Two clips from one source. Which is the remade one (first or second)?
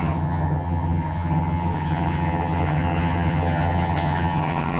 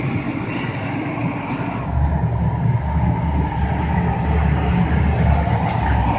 first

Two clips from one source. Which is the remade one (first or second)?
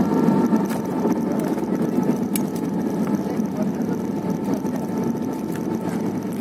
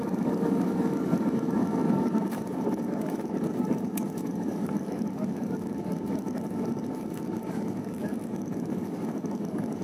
second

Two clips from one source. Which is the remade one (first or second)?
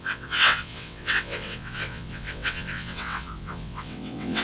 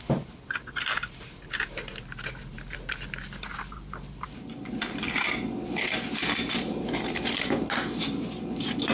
first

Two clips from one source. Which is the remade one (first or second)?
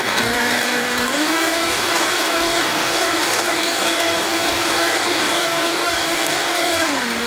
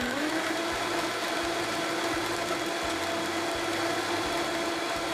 first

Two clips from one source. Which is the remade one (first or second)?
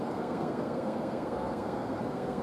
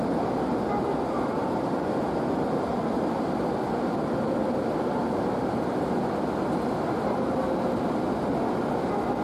first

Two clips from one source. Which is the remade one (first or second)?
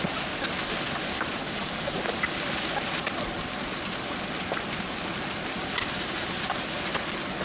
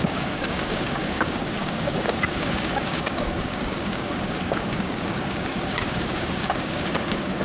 second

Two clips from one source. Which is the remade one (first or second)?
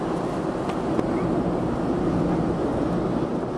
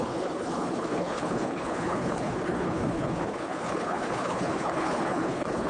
second